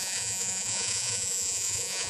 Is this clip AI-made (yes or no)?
yes